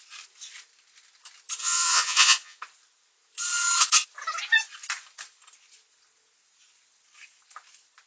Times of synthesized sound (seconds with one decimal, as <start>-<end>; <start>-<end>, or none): 1.6-2.6